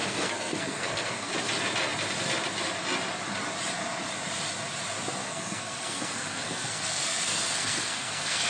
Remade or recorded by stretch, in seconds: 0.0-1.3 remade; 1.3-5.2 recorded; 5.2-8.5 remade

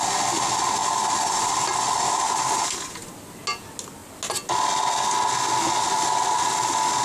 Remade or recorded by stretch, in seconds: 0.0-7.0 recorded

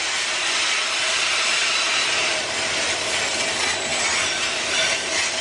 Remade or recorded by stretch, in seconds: 0.0-5.4 recorded

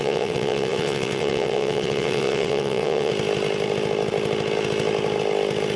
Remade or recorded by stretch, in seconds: 0.0-3.1 remade; 3.1-5.8 recorded